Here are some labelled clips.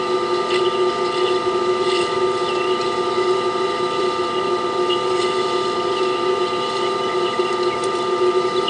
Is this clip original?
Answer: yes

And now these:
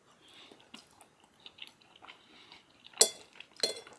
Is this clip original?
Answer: yes